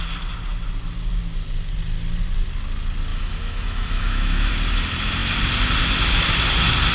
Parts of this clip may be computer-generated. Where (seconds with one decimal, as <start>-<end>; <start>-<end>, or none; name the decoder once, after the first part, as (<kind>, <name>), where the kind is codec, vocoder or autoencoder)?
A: 3.1-4.5 (autoencoder, DAC-VAE)